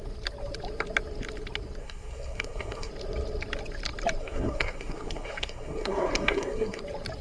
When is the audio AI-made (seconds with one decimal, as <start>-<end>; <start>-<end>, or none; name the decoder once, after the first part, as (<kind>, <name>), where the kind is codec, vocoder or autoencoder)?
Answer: 1.8-2.9 (codec, SNAC); 4.2-6.8